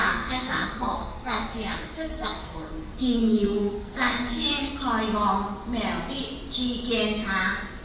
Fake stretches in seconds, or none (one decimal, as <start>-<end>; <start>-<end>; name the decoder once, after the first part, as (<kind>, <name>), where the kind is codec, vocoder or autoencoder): 0.0-4.7 (codec, SNAC)